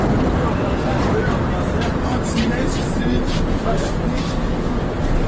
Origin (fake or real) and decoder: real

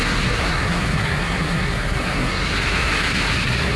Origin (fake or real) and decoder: fake, codec, SNAC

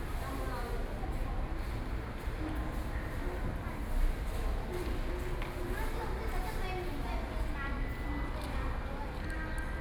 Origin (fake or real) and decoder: real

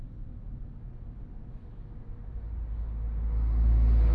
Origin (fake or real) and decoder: real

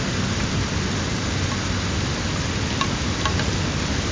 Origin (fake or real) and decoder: real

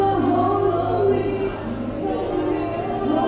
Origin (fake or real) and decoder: real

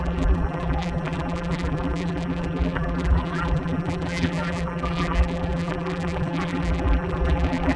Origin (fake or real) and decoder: fake, vocoder, BigVGAN v2